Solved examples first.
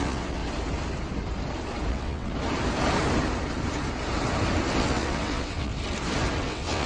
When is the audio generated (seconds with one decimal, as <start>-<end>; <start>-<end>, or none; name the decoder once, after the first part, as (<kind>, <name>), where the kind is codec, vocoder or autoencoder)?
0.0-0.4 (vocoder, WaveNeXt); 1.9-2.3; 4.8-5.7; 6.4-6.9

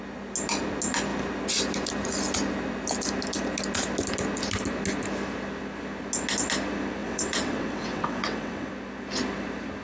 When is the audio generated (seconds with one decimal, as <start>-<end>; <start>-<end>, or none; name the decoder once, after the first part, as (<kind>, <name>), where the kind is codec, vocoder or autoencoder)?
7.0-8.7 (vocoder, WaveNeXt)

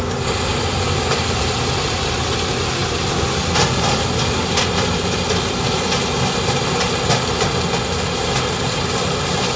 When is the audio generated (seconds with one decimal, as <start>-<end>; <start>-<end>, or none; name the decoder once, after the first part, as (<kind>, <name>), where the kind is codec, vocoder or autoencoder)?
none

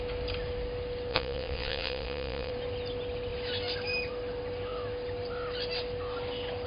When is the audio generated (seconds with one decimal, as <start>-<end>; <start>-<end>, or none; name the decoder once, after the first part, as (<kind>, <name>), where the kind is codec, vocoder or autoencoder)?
1.1-2.5 (vocoder, WaveNeXt)